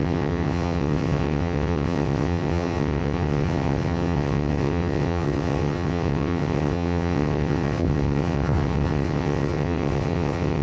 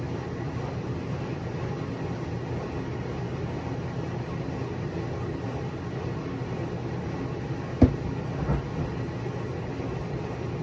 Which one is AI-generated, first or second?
first